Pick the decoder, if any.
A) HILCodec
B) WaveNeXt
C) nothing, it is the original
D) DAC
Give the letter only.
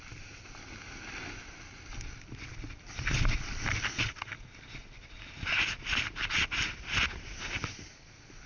C